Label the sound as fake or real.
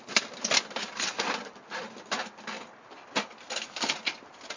real